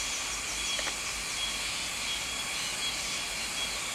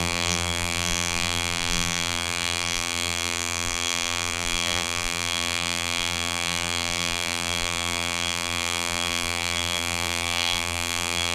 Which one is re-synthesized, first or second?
second